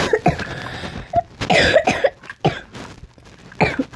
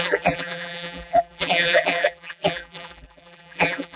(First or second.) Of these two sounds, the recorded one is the first